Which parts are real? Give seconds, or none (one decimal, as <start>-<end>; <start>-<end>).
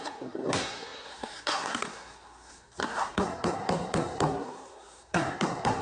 none